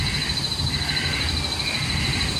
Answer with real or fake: real